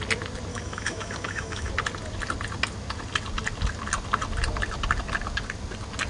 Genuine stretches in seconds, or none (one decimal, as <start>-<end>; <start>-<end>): 0.0-0.5; 1.7-6.1